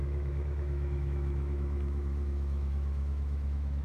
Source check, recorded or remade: remade